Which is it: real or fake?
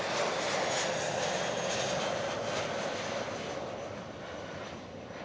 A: real